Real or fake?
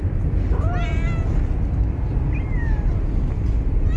real